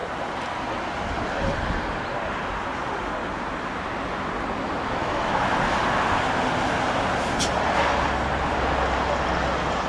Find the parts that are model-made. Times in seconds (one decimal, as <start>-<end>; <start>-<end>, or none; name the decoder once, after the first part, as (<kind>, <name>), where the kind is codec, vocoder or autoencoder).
5.0-5.6 (autoencoder, DAC-VAE)